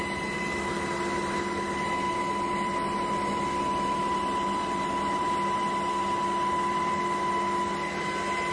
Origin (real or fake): real